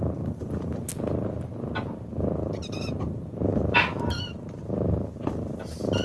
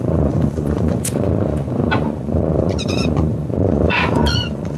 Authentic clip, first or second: first